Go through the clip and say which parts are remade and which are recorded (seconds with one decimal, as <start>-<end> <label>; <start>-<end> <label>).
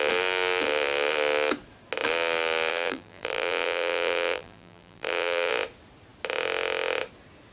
0.0-2.7 recorded; 2.7-5.5 remade; 5.5-7.5 recorded